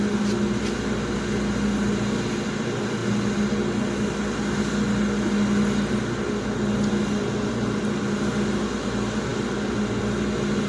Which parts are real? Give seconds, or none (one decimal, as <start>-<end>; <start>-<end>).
0.0-10.7